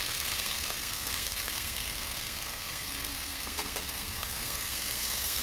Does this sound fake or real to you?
fake